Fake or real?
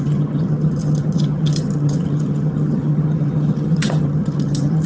fake